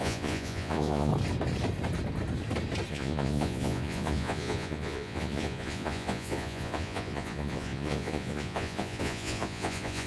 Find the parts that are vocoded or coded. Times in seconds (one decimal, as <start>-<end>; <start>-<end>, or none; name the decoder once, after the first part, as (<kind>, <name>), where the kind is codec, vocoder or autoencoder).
0.0-1.1 (vocoder, Vocos); 2.9-10.1